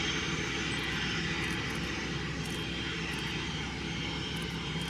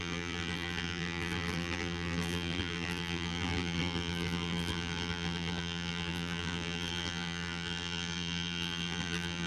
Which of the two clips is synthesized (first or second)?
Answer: second